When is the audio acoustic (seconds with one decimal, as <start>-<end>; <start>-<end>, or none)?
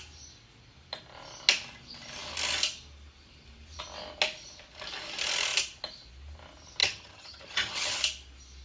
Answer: 0.0-6.8; 8.0-8.6